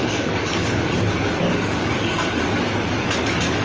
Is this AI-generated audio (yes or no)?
yes